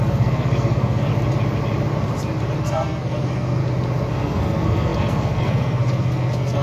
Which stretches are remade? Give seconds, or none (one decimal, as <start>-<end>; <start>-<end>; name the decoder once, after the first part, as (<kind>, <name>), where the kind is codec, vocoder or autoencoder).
0.0-1.1 (codec, SNAC); 2.6-3.6; 4.1-6.6